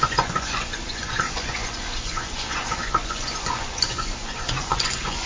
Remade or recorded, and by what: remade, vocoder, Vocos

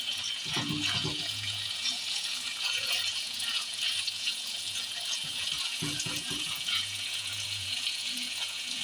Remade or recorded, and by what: remade, vocoder, Vocos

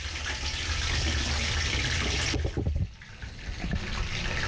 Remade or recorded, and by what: recorded